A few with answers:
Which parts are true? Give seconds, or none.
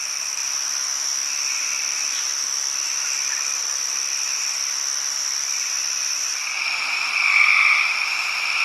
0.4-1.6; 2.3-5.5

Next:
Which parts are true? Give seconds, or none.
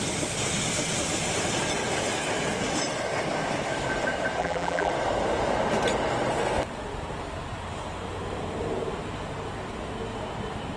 0.0-4.4; 4.9-10.8